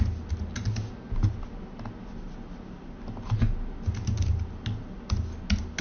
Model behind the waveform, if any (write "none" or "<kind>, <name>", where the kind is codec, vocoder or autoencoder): none